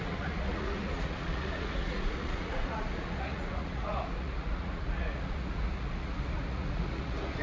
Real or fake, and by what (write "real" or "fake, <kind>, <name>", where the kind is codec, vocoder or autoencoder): fake, vocoder, Vocos